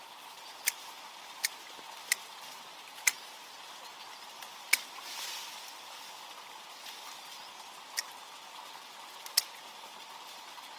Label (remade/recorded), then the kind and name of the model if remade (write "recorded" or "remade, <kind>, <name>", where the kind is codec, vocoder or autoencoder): recorded